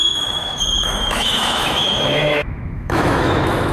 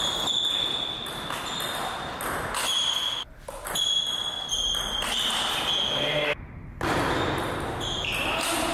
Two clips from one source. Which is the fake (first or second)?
first